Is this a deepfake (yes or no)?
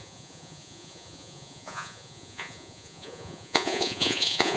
yes